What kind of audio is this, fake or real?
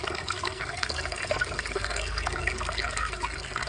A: fake